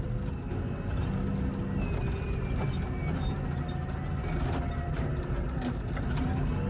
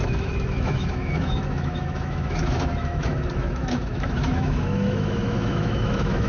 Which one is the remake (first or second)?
second